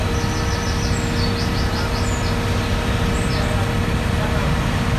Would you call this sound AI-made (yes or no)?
no